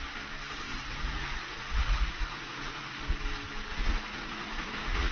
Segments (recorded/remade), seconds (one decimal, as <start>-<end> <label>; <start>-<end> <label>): 0.0-0.7 recorded; 0.7-3.0 remade; 3.0-3.7 recorded; 3.7-5.1 remade